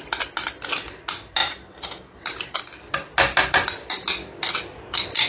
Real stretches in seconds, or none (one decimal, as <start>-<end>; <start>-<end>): 0.0-5.3